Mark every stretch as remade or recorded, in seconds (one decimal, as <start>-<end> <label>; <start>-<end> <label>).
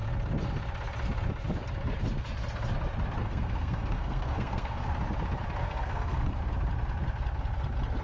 0.0-3.2 recorded; 3.2-4.9 remade; 4.9-5.6 recorded; 5.6-6.4 remade; 6.4-8.0 recorded